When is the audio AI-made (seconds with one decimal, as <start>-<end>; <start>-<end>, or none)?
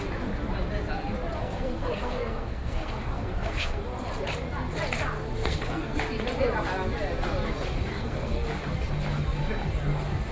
1.4-3.8; 5.4-6.0; 7.9-8.7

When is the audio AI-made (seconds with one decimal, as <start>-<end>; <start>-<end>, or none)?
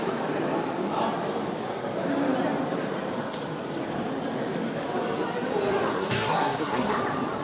6.0-7.0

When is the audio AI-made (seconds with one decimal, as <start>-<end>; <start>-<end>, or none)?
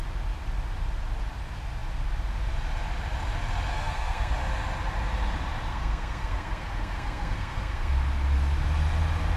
3.7-4.3; 5.7-7.9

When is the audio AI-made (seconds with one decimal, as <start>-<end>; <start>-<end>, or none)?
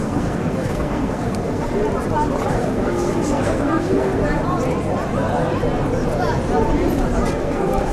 0.0-1.8; 2.5-4.2; 7.4-7.9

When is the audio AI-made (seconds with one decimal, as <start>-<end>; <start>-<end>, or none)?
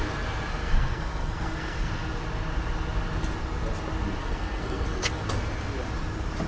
0.6-1.9; 4.2-5.2